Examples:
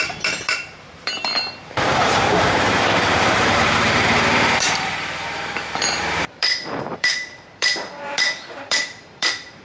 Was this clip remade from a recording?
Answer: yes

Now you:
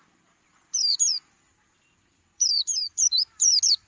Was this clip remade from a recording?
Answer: yes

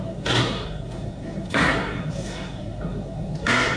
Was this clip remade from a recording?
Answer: yes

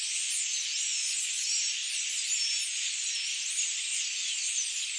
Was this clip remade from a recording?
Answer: no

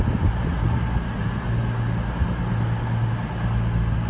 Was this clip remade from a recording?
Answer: no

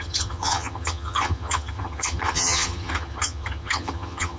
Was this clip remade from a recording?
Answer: yes